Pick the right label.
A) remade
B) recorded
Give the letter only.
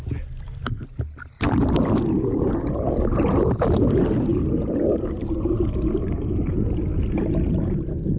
B